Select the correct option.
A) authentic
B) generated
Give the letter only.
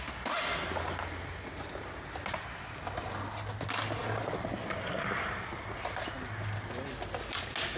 A